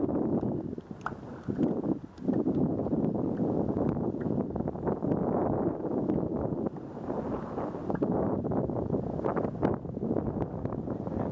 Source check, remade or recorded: recorded